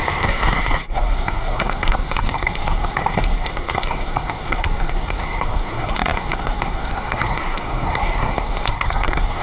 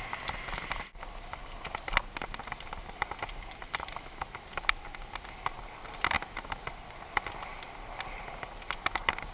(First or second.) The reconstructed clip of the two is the first